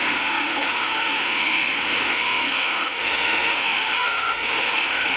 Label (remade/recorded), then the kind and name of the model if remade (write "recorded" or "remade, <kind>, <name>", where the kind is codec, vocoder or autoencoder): remade, autoencoder, DAC-VAE